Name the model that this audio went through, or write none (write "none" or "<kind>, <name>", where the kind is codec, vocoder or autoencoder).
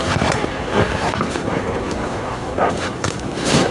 codec, SNAC